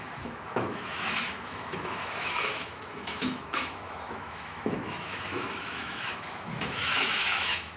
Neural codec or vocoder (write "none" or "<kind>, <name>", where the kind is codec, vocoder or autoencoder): autoencoder, DAC-VAE